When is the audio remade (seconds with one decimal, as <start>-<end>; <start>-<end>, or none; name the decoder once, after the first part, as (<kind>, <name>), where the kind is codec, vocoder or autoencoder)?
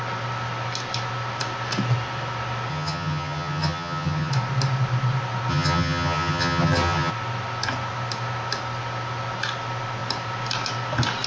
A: 2.7-4.3 (vocoder, HiFi-GAN); 5.5-7.1